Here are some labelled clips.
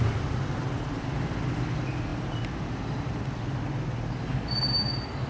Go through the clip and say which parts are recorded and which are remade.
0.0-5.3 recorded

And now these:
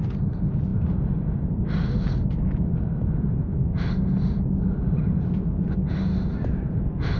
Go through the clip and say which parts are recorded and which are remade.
0.0-7.2 recorded

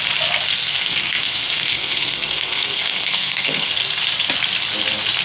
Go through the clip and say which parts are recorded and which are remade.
0.0-0.6 recorded; 0.6-3.7 remade; 3.7-5.2 recorded

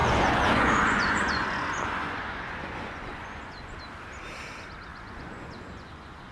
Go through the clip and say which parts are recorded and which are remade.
0.0-3.8 remade; 3.8-4.9 recorded; 4.9-6.3 remade

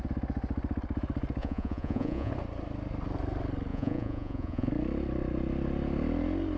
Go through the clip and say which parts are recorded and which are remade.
0.0-1.4 recorded; 1.4-2.3 remade; 2.3-3.7 recorded; 3.7-4.7 remade; 4.7-6.6 recorded

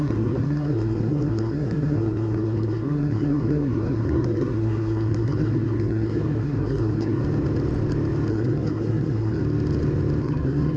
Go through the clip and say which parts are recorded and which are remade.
0.0-7.2 remade; 7.2-8.3 recorded; 8.3-9.4 remade; 9.4-10.2 recorded; 10.2-10.8 remade

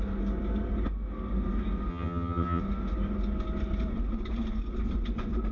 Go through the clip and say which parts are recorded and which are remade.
0.0-1.9 recorded; 1.9-2.6 remade; 2.6-5.5 recorded

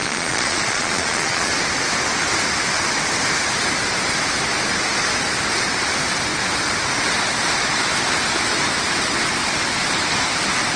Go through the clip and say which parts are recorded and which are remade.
0.0-1.5 remade; 1.5-10.8 recorded